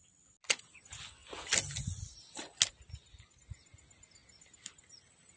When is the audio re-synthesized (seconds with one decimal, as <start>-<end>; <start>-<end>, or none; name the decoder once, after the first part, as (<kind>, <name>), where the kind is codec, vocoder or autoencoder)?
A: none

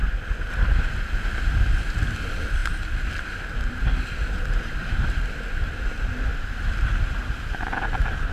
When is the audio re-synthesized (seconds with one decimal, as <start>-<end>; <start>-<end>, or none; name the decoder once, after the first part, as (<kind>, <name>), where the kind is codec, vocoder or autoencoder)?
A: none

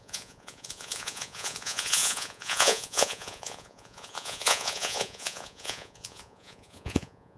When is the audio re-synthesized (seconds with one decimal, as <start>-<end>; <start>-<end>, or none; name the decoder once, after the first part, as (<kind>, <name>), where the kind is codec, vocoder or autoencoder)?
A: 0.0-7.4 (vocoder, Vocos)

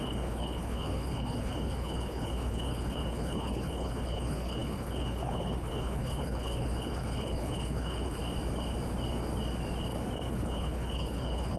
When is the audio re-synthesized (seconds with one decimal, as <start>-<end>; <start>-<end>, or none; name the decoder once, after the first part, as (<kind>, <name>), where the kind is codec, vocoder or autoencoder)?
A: 0.0-8.2 (codec, HILCodec); 10.3-11.6